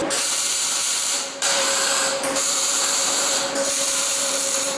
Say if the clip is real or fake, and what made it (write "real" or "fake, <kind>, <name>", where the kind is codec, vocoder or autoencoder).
fake, vocoder, BigVGAN v2